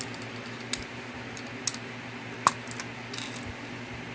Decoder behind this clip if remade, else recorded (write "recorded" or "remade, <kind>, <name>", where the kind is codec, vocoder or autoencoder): recorded